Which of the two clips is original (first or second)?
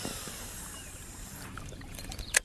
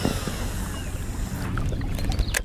second